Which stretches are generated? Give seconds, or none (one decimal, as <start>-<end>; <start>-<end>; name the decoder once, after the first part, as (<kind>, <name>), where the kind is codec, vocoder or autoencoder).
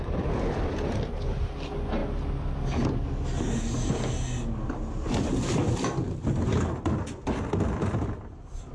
none